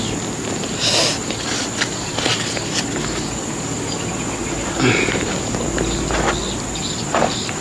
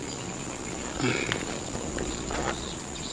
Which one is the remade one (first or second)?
second